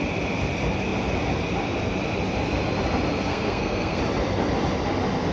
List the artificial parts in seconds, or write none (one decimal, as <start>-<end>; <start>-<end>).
3.3-4.0